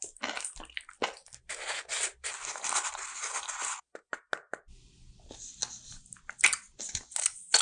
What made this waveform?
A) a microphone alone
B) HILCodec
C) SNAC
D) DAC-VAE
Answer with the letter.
A